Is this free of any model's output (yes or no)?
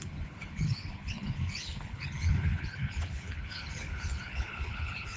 no